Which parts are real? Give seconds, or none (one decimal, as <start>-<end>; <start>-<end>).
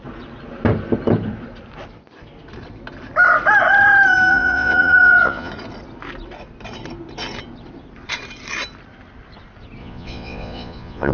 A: 0.0-4.3; 5.5-9.8